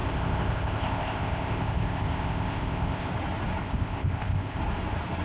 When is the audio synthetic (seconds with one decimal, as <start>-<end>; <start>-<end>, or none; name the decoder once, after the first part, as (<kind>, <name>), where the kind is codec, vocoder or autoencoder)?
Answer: 0.0-3.1 (codec, ZipCodec); 3.6-4.6